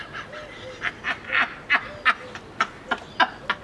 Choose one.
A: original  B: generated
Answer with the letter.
A